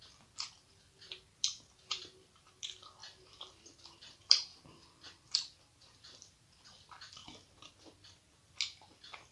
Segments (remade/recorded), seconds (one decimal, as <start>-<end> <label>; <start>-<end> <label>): 0.0-7.2 remade; 7.2-9.3 recorded